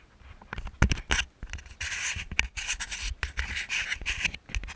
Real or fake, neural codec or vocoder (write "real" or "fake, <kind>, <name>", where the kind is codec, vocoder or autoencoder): real